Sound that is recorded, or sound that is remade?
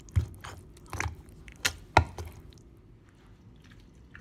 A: recorded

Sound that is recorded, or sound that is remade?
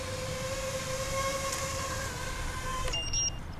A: recorded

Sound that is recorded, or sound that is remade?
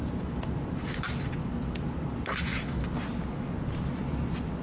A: recorded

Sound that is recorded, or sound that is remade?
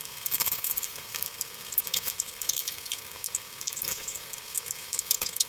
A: remade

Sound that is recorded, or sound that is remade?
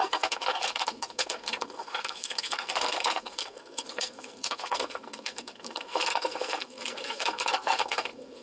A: remade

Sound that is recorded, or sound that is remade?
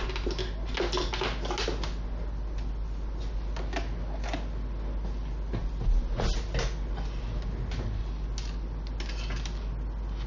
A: recorded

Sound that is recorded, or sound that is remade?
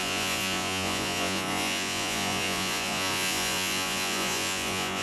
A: remade